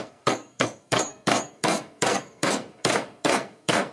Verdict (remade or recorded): remade